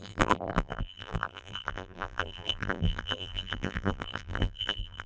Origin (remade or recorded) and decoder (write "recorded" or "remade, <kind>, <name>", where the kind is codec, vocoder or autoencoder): remade, vocoder, BigVGAN v2